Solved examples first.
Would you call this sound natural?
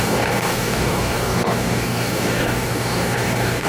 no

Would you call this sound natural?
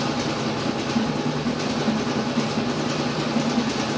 yes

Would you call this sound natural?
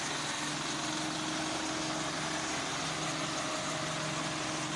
yes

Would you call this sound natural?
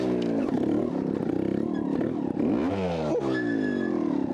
yes